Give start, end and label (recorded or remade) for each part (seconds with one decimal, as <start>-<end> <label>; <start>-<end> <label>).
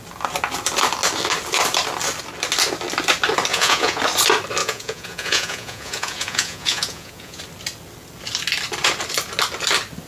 0.0-3.5 recorded; 3.5-4.0 remade; 4.0-4.6 recorded; 4.6-7.4 remade; 7.4-10.1 recorded